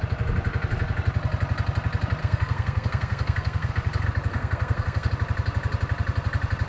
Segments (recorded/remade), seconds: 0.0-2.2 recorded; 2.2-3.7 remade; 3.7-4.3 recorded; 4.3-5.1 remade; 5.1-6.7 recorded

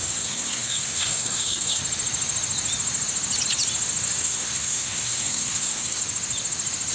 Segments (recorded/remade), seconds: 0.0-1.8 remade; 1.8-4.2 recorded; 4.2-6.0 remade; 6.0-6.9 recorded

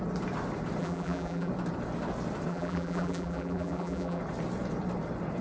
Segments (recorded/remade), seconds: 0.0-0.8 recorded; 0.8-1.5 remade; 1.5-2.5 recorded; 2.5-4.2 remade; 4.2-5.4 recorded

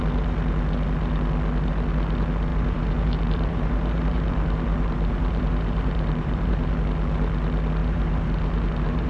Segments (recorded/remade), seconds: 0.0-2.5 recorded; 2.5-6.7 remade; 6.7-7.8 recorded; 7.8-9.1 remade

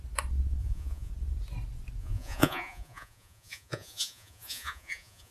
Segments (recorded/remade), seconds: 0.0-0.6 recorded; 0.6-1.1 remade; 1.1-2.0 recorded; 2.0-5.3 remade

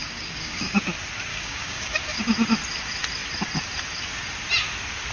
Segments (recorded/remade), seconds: 0.0-0.8 remade; 0.8-1.3 recorded; 1.3-2.2 remade; 2.2-5.1 recorded

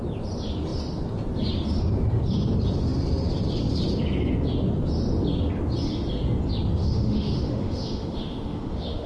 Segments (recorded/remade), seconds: 0.0-6.8 recorded; 6.8-9.1 remade